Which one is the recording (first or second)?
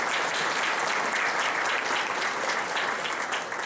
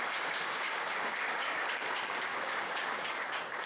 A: first